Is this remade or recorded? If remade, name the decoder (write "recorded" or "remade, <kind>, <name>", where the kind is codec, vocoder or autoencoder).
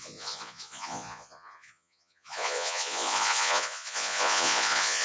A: remade, vocoder, Vocos